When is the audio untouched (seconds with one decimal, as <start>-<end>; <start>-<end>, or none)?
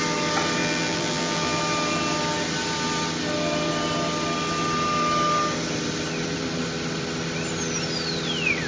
0.0-0.6; 1.6-8.7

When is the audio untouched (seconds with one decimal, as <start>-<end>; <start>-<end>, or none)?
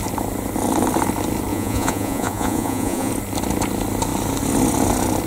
0.0-1.5; 3.1-5.3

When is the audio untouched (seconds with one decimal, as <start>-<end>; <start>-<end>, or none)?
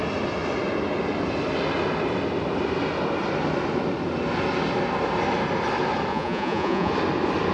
0.0-6.1; 6.9-7.5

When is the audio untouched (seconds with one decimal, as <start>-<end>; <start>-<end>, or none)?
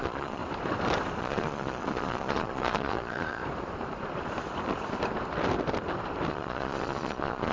0.4-1.2; 3.4-6.3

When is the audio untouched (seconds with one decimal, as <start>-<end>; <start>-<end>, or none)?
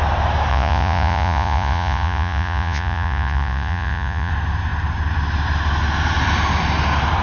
0.0-0.5; 4.3-7.2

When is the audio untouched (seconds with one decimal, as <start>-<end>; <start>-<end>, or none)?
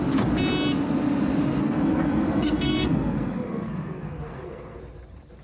0.0-1.6; 4.8-5.4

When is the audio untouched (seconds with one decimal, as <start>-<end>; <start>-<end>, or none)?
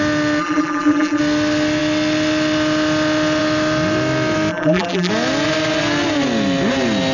0.0-0.4; 1.2-4.5; 5.1-7.1